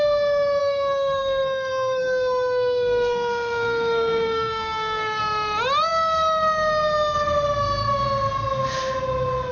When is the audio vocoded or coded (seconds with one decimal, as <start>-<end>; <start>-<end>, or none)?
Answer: 0.6-5.2